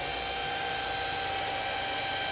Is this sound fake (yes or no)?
no